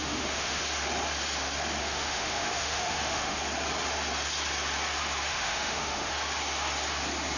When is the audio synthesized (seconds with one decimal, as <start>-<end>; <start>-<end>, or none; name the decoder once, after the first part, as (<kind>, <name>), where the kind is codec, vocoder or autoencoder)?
0.0-0.6 (autoencoder, DAC-VAE); 1.8-3.4; 5.3-6.1